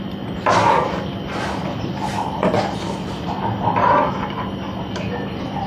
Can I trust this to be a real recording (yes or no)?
yes